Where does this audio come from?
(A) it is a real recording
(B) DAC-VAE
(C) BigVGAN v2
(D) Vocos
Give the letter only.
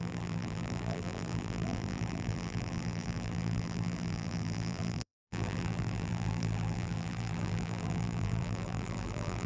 C